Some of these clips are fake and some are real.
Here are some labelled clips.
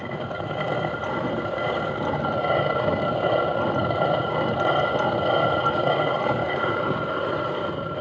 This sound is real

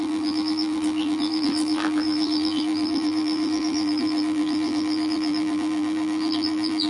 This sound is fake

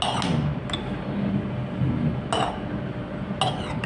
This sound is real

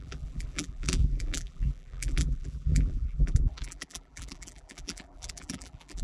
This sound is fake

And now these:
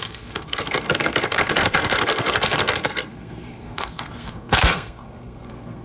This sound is fake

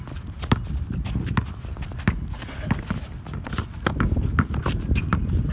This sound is real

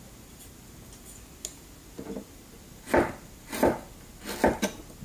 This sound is real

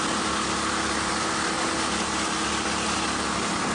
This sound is real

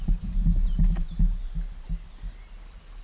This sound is real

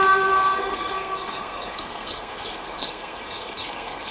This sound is fake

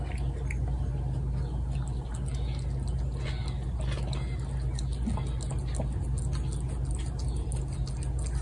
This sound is real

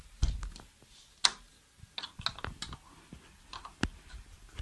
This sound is real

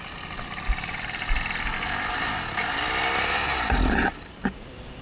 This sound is real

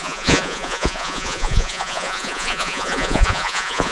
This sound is fake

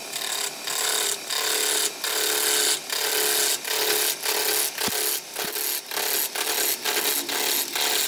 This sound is real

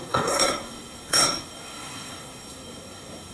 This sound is fake